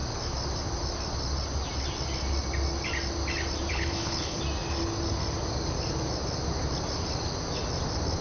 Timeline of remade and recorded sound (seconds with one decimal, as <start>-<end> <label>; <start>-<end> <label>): 0.0-3.7 recorded; 3.7-4.4 remade; 4.4-8.2 recorded